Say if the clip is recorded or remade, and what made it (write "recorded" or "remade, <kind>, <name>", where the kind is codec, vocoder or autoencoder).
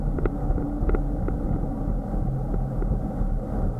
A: recorded